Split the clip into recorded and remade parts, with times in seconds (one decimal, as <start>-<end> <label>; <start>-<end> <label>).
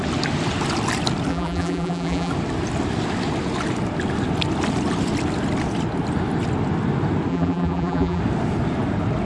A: 0.0-1.3 recorded; 1.3-2.3 remade; 2.3-7.3 recorded; 7.3-8.2 remade; 8.2-9.3 recorded